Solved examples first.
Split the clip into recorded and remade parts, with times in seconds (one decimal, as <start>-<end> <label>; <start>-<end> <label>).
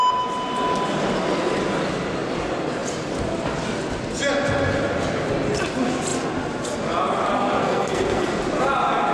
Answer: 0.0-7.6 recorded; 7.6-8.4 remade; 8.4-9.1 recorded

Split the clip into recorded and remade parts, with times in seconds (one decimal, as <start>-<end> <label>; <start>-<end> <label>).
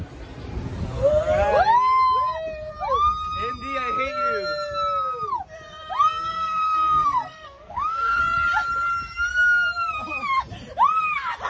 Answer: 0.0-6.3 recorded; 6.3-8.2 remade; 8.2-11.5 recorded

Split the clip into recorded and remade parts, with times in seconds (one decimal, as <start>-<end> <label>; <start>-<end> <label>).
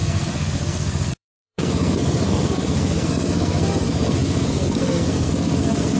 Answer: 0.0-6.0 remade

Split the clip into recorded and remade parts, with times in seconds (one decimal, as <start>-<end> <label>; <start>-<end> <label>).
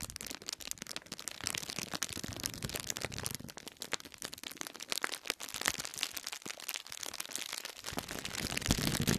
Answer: 0.0-9.2 recorded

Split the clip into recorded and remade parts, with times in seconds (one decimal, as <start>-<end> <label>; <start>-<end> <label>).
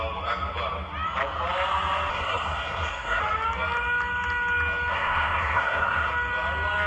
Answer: 0.0-2.1 recorded; 2.1-3.2 remade; 3.2-4.9 recorded; 4.9-6.1 remade; 6.1-6.9 recorded